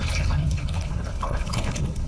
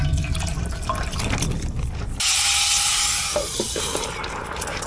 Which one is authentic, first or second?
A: second